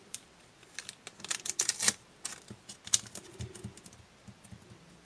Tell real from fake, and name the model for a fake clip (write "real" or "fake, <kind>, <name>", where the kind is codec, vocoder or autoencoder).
real